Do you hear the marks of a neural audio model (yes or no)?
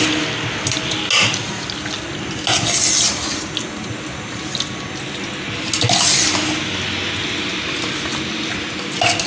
no